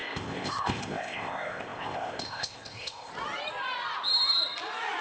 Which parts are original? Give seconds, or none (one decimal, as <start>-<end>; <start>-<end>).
3.1-5.0